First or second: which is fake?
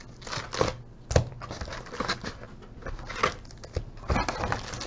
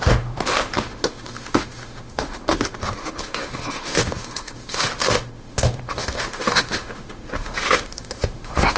second